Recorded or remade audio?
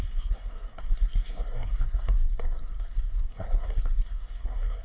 remade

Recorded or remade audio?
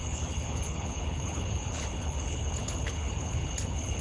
remade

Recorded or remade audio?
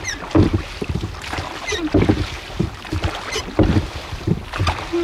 recorded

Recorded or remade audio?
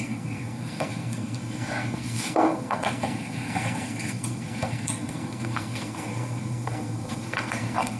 remade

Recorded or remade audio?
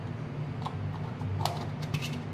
recorded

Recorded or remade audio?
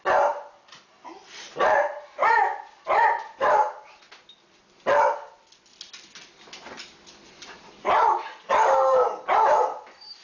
recorded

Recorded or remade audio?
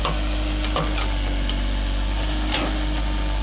recorded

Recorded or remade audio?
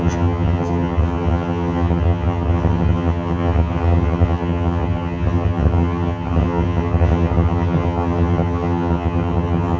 remade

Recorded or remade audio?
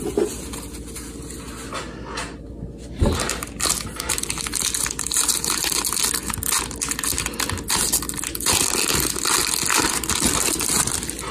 recorded